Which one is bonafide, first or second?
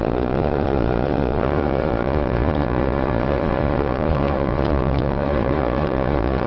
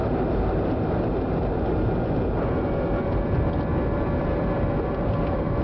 second